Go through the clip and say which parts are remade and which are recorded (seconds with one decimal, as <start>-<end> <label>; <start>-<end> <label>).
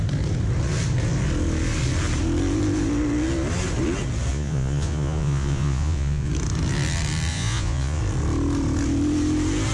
0.0-4.3 recorded; 4.3-6.3 remade; 6.3-7.3 recorded; 7.3-8.0 remade; 8.0-9.7 recorded